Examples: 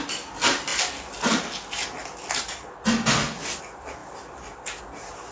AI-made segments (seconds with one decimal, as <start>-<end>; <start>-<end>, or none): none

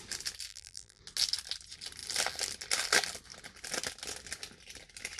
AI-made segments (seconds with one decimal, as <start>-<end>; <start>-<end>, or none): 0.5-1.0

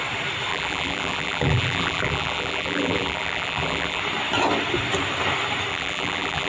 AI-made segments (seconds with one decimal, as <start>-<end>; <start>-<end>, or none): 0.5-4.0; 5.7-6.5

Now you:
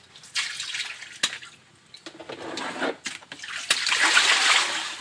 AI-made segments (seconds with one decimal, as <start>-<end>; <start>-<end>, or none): none